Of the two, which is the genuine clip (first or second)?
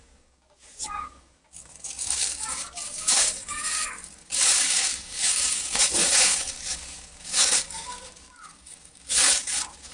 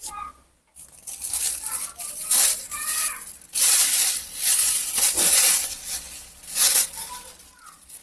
second